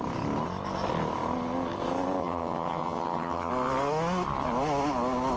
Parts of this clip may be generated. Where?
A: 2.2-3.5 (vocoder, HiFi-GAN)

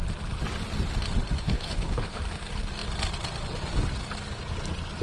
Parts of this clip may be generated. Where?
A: 1.4-2.2 (codec, HILCodec)

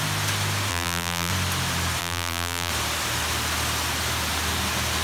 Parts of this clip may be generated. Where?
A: 0.7-1.3 (vocoder, BigVGAN v2); 2.0-2.7

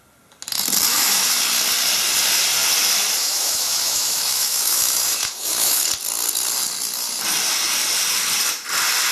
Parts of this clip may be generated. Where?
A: 0.9-1.4 (autoencoder, DAC-VAE); 3.2-5.9